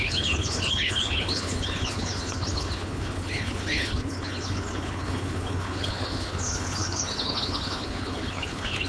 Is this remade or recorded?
remade